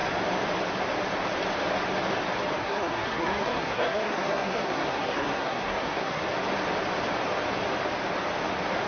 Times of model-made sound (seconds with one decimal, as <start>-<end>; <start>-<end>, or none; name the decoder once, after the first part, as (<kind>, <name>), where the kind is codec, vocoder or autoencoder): 2.6-6.2 (codec, SNAC)